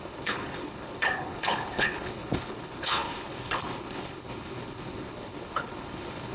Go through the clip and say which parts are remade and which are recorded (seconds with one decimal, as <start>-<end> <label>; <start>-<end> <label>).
0.0-6.3 remade